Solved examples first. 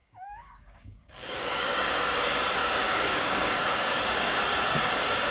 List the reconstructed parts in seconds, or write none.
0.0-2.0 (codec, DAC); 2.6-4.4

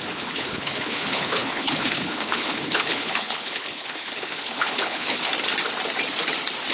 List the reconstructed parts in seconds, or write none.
0.0-5.3 (codec, HILCodec)

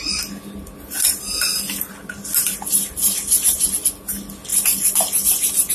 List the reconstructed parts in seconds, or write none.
4.5-5.7 (vocoder, BigVGAN v2)

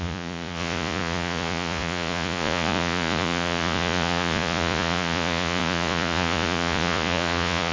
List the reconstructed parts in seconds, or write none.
0.0-7.7 (vocoder, Vocos)

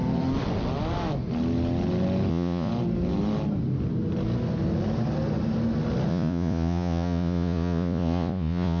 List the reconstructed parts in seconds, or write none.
2.3-2.7 (vocoder, Vocos); 6.1-8.8

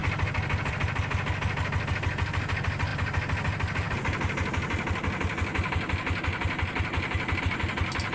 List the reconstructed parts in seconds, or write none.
none

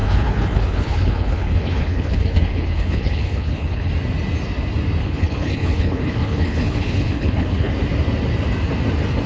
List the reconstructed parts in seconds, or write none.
0.0-3.9 (codec, HILCodec); 5.0-7.7

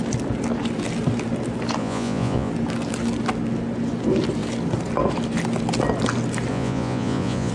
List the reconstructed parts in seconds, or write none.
1.8-2.5 (vocoder, Vocos); 6.5-7.5